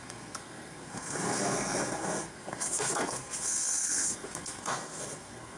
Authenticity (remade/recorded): remade